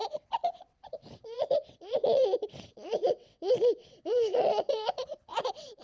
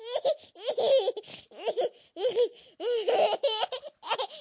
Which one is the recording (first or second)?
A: second